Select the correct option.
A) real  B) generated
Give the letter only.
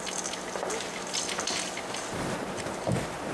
A